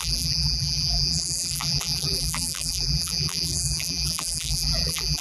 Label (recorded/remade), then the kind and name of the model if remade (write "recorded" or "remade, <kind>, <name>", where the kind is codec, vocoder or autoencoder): remade, vocoder, BigVGAN v2